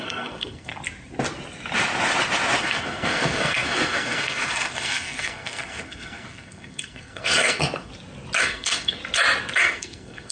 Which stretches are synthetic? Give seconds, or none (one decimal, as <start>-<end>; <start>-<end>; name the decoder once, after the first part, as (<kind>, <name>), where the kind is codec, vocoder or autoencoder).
0.0-0.7 (codec, SNAC); 2.6-7.9; 8.4-9.0; 9.6-10.3

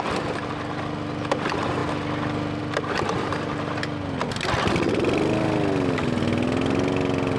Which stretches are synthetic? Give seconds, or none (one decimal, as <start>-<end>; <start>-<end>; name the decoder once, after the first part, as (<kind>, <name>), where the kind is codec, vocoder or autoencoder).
none

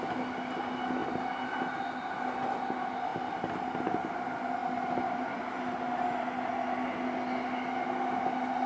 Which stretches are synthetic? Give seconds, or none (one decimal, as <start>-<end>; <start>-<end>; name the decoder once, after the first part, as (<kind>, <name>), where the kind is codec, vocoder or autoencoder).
none

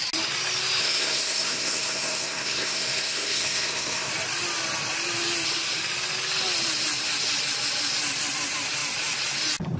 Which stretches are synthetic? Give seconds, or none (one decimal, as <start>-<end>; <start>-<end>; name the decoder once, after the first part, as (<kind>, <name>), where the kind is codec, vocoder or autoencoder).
0.8-4.1 (codec, SNAC)

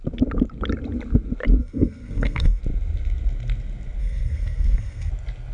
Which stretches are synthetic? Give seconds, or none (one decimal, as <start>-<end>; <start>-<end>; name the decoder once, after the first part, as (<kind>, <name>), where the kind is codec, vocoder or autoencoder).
1.6-2.6 (codec, SNAC); 4.0-5.1

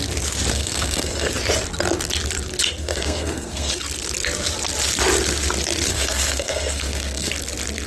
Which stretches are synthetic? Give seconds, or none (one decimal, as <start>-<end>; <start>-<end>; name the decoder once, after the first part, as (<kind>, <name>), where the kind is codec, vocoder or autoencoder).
0.5-1.3 (codec, SNAC); 2.8-3.7; 5.9-7.3